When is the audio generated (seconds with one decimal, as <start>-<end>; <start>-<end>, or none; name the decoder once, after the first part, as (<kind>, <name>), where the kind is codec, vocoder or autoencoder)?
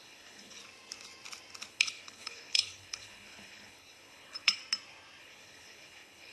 0.0-0.6 (codec, HILCodec); 1.7-4.6; 5.2-6.3